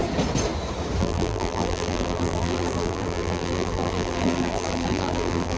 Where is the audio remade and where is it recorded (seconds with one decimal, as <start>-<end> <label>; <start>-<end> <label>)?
0.0-1.0 recorded; 1.0-5.6 remade